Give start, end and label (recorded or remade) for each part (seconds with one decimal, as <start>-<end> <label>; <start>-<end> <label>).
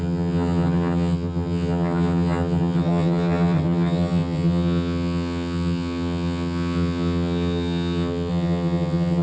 0.0-9.2 remade